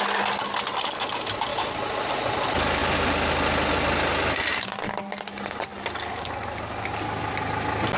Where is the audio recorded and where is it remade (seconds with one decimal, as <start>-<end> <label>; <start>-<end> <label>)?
0.0-1.5 recorded; 1.5-2.1 remade; 2.1-2.8 recorded; 2.8-3.3 remade; 3.3-8.0 recorded